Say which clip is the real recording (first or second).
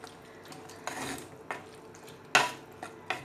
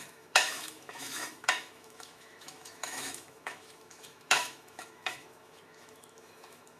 first